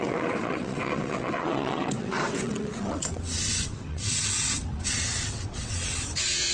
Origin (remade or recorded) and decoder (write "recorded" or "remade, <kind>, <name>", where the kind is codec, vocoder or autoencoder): remade, vocoder, WaveNeXt